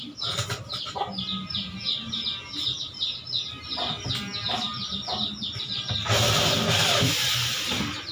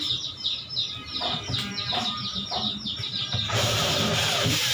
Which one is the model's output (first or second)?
second